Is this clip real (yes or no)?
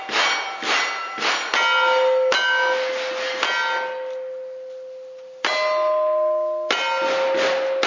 yes